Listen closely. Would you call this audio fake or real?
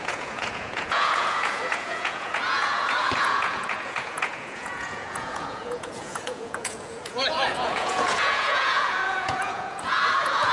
fake